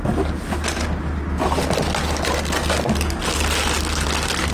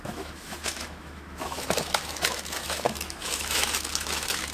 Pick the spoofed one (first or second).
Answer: second